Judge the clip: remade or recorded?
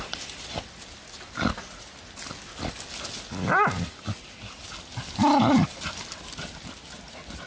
recorded